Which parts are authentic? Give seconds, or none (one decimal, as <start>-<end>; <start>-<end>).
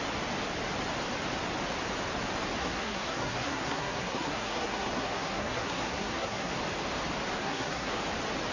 0.0-2.6; 6.5-7.4; 8.0-8.5